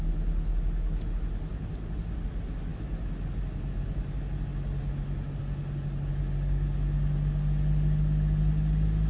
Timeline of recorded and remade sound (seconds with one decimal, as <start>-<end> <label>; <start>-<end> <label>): 0.0-9.1 recorded